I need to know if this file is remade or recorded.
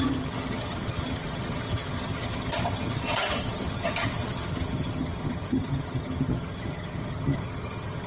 remade